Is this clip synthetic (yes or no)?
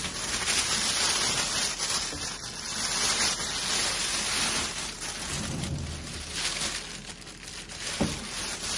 no